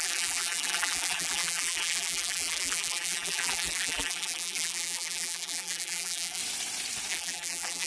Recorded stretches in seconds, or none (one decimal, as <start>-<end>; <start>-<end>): 6.4-7.1